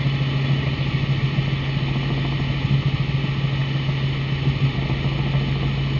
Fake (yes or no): no